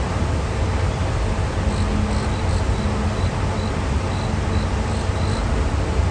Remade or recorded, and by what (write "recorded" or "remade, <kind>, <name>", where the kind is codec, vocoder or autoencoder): recorded